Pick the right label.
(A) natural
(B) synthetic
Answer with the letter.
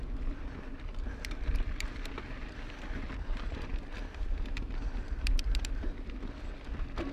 B